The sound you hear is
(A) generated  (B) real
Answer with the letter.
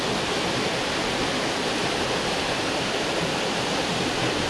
B